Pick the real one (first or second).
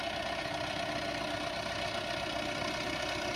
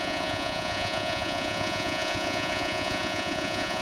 first